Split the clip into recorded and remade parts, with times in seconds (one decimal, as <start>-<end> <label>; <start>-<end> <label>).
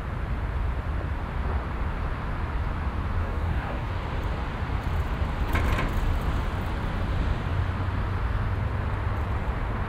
0.0-3.2 recorded; 3.2-3.9 remade; 3.9-9.9 recorded